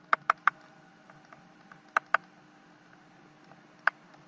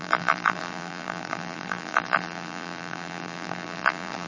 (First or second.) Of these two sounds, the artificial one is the second